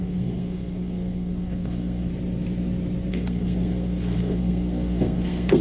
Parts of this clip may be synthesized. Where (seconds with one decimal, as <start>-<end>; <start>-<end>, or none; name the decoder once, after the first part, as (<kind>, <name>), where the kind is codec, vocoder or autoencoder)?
0.0-2.1 (codec, SNAC); 3.1-5.6